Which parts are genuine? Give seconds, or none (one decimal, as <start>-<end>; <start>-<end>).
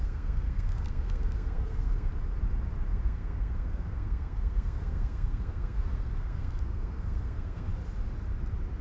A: 2.1-2.9; 7.7-8.8